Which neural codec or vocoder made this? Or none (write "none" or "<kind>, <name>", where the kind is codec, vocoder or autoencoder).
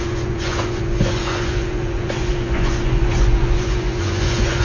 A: vocoder, Vocos